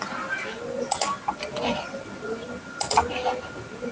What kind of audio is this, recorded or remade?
remade